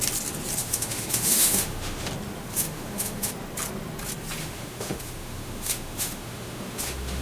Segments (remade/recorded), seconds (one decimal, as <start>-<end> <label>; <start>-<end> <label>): 0.0-0.6 recorded; 0.6-2.1 remade; 2.1-2.5 recorded; 2.5-3.3 remade; 3.3-4.4 recorded; 4.4-7.2 remade